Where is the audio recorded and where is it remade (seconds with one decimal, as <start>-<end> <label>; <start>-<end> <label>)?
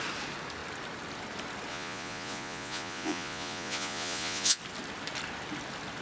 0.0-1.7 recorded; 1.7-4.6 remade; 4.6-6.0 recorded